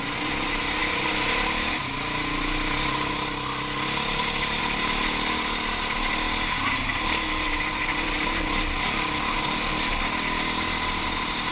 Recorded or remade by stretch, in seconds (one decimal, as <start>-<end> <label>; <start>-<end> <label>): 0.0-11.5 recorded